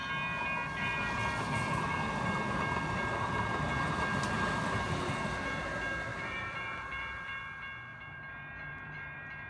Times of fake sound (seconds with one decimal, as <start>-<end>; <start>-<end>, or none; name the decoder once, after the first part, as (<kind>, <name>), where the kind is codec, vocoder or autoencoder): 6.1-7.4 (vocoder, BigVGAN v2); 7.9-9.5